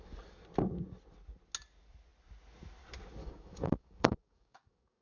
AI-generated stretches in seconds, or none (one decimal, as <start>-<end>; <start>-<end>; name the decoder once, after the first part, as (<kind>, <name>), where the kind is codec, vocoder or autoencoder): 3.2-5.0 (codec, DAC)